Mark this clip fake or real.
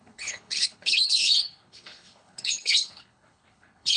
fake